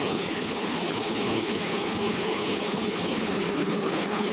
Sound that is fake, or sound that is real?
fake